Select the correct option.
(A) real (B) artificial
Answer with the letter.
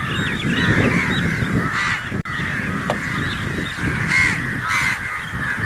A